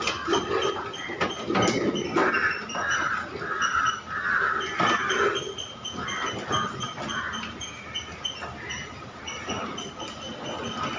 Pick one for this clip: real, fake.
real